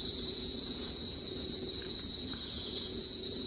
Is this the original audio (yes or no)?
no